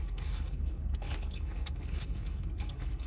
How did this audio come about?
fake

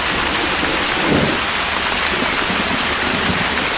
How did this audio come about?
real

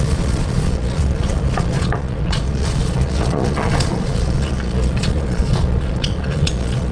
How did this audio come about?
fake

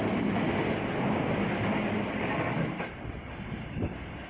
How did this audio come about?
real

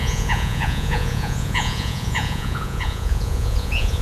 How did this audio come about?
fake